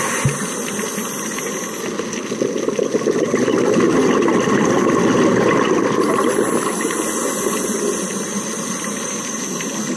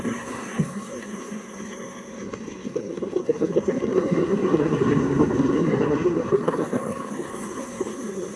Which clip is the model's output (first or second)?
second